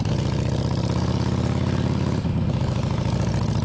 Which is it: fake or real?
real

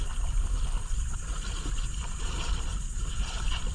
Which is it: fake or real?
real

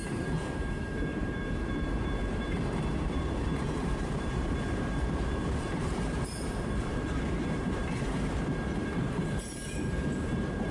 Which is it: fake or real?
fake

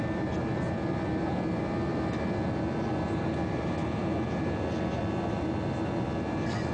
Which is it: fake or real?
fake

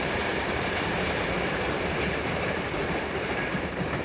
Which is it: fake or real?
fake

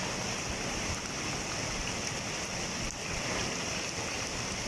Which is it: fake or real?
real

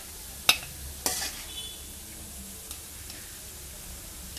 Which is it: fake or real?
real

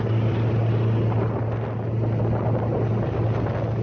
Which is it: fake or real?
real